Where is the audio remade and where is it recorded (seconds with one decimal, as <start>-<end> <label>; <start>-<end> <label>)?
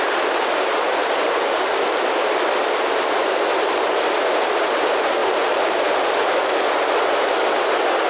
0.0-1.0 recorded; 1.0-2.1 remade; 2.1-3.5 recorded; 3.5-4.2 remade; 4.2-5.2 recorded; 5.2-5.8 remade; 5.8-8.1 recorded